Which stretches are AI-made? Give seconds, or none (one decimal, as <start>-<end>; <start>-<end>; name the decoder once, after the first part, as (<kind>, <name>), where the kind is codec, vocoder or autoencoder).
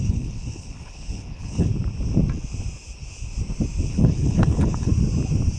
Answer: 0.0-1.7 (codec, HILCodec); 3.9-4.9